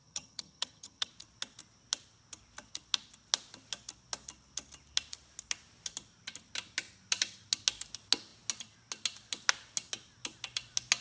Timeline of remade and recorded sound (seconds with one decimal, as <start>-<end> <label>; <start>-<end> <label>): 0.0-1.1 remade; 1.1-11.0 recorded